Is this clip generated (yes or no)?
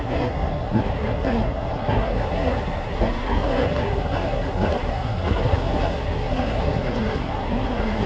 yes